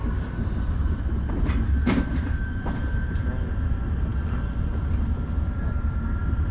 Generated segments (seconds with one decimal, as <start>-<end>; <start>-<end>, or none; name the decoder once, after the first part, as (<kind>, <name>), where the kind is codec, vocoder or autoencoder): 0.0-0.7 (vocoder, BigVGAN v2); 2.1-3.3